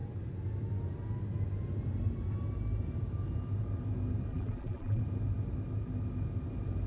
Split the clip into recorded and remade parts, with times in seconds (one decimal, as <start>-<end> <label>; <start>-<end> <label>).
0.0-4.3 recorded; 4.3-5.0 remade; 5.0-6.9 recorded